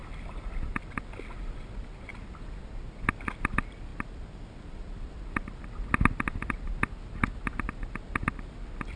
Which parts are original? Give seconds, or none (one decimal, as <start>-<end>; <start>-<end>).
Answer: 1.0-2.1; 2.6-3.9; 6.9-9.0

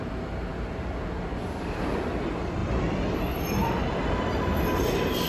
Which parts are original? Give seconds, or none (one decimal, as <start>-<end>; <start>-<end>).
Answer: 0.0-2.6